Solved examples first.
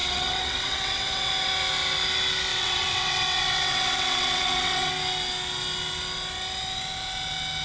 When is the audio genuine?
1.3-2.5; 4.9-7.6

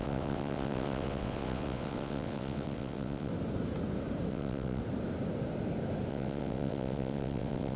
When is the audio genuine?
3.3-4.3; 4.8-6.1

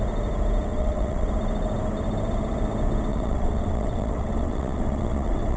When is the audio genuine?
0.0-0.7; 1.3-3.1

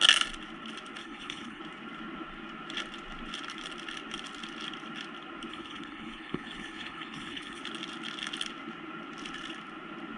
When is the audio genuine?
0.0-1.0; 1.6-5.5; 7.6-10.2